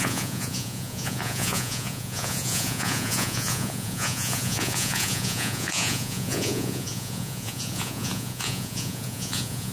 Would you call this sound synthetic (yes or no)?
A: yes